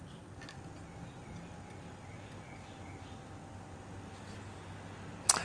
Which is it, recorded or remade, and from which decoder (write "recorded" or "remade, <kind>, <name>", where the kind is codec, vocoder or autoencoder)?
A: recorded